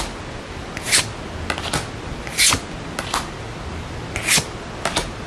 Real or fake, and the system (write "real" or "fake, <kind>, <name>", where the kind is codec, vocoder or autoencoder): real